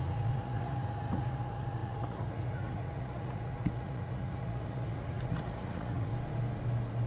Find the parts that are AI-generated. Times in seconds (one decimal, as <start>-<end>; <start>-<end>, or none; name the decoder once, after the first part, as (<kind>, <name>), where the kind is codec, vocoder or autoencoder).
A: 0.0-6.1 (vocoder, Vocos)